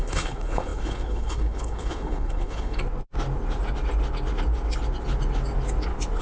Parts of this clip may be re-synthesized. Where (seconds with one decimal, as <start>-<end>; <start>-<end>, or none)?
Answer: 0.0-2.8